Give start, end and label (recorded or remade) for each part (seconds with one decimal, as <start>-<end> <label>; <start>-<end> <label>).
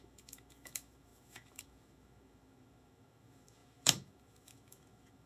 0.0-5.3 remade